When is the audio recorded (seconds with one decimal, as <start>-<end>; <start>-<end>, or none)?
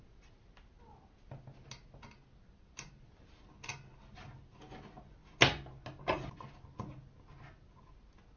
0.0-8.4